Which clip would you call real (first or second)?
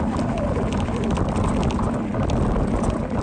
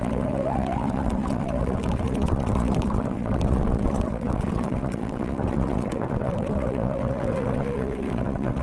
first